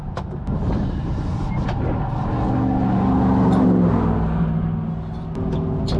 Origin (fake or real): real